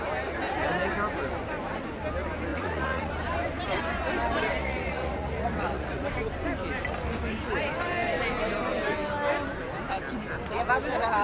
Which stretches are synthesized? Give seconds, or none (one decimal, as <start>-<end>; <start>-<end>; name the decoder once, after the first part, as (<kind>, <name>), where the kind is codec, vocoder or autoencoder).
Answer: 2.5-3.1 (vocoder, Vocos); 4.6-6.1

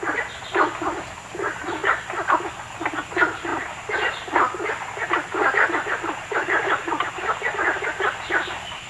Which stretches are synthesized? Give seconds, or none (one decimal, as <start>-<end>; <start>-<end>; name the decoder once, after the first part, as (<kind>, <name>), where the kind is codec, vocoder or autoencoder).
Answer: none

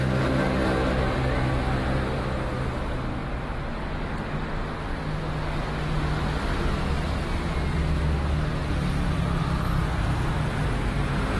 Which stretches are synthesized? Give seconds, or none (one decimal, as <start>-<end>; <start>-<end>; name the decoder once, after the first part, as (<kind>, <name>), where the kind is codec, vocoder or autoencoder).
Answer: none